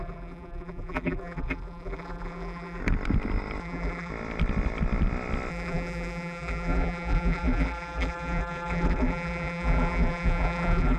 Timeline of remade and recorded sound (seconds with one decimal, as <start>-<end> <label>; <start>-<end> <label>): 0.0-2.8 remade; 2.8-3.6 recorded; 3.6-4.1 remade; 4.1-5.5 recorded; 5.5-11.0 remade